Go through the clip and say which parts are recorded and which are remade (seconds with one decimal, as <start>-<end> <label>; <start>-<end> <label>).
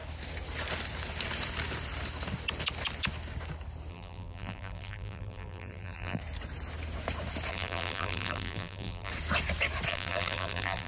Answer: 0.0-3.9 recorded; 3.9-6.2 remade; 6.2-7.5 recorded; 7.5-9.1 remade; 9.1-9.9 recorded; 9.9-10.9 remade